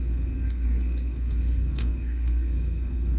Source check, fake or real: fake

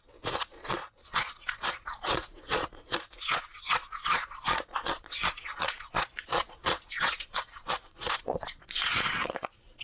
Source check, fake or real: fake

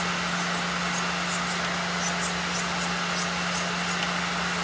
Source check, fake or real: real